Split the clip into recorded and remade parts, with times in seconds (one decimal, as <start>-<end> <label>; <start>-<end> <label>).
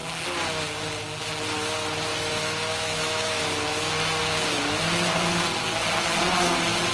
0.0-2.1 recorded; 2.1-3.4 remade; 3.4-6.9 recorded